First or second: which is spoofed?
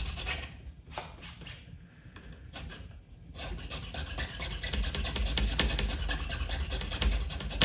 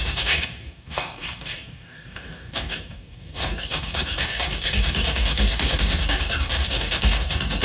second